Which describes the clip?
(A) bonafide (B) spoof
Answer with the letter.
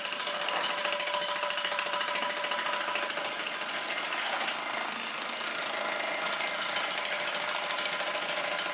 A